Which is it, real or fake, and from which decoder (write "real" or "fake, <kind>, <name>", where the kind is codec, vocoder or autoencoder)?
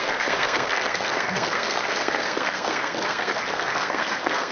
fake, codec, SNAC